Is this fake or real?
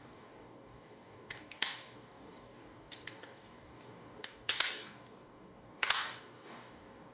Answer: fake